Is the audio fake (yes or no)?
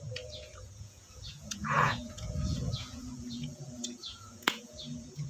yes